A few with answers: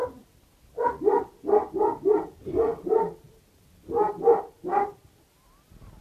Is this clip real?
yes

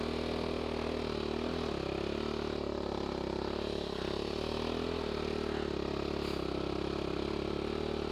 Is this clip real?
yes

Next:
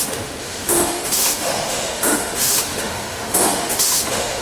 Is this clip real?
no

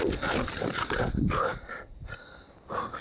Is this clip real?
yes